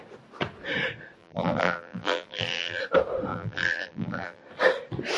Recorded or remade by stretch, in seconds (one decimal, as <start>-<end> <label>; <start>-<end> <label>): 0.0-1.2 recorded; 1.2-2.8 remade; 2.8-3.3 recorded; 3.3-4.4 remade; 4.4-5.2 recorded

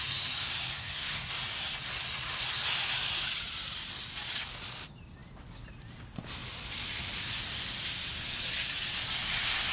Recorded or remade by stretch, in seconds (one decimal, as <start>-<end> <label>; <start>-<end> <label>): 0.0-0.7 recorded; 0.7-1.3 remade; 1.3-9.7 recorded